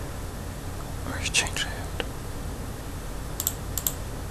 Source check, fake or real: real